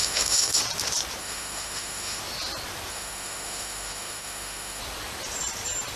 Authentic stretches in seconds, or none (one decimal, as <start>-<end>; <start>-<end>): 0.6-1.2; 2.2-2.9; 4.8-6.0